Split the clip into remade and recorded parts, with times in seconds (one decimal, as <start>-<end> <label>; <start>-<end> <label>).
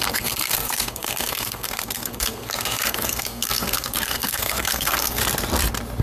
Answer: 0.0-5.2 remade; 5.2-6.0 recorded